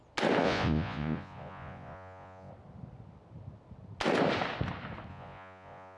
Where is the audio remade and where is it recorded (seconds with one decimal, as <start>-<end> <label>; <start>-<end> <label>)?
0.0-0.4 recorded; 0.4-2.5 remade; 2.5-5.1 recorded; 5.1-6.0 remade